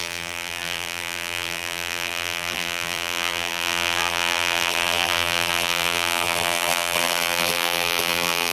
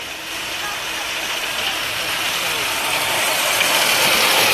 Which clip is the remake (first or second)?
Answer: first